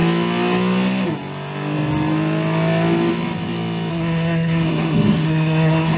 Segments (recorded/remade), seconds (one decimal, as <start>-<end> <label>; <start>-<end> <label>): 0.0-3.9 recorded; 3.9-6.0 remade